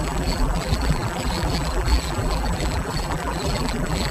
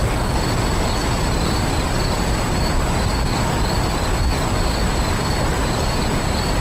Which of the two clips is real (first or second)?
second